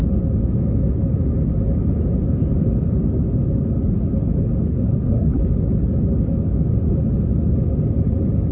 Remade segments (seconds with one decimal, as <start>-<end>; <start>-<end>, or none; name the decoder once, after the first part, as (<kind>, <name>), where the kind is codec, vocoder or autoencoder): 4.7-5.4 (codec, SNAC)